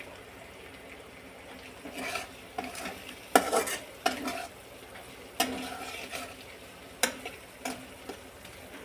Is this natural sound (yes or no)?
yes